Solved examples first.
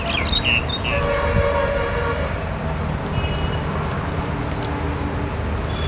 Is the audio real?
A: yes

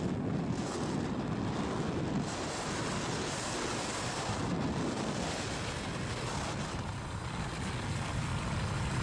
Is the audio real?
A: yes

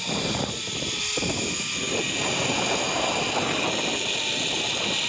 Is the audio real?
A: yes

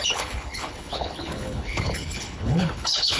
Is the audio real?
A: no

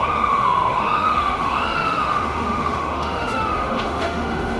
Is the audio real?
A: no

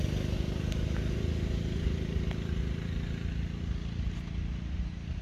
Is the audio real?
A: yes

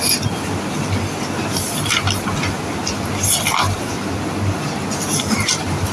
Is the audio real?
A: yes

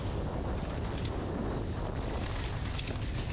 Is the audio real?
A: yes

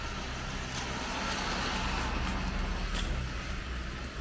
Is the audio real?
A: yes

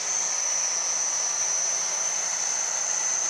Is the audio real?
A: yes